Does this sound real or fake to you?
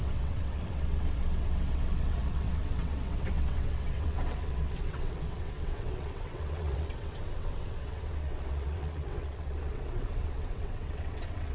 fake